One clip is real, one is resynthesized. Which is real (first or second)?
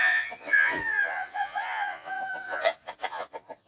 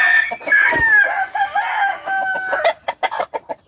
second